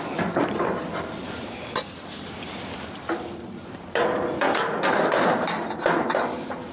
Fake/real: real